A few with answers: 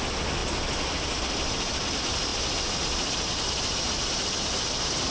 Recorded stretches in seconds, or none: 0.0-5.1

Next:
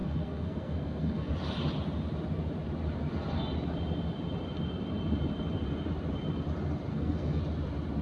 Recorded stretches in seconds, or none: 1.3-6.9; 7.4-8.0

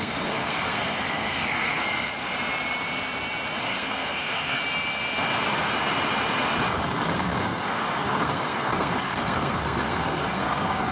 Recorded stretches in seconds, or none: 2.1-3.6; 4.6-6.7